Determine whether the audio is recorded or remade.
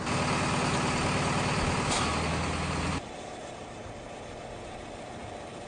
recorded